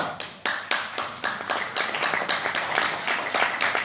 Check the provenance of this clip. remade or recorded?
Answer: recorded